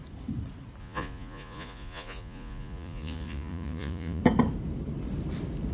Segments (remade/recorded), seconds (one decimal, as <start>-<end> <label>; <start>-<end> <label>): 0.0-0.8 recorded; 0.8-4.2 remade; 4.2-5.7 recorded